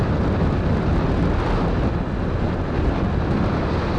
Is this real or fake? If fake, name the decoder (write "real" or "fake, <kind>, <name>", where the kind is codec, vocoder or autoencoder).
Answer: real